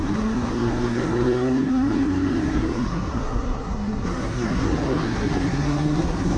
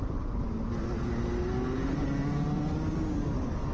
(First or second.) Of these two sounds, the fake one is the first